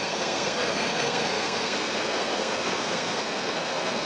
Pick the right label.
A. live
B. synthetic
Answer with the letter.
B